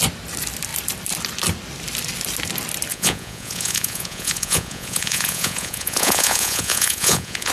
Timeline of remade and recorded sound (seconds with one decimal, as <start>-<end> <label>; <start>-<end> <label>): 0.0-2.9 recorded; 2.9-7.5 remade